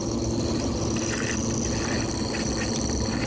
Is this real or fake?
real